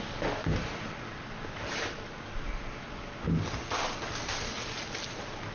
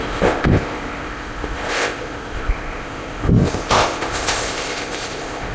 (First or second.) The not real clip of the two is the second